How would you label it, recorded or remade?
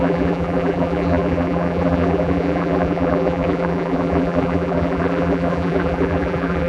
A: remade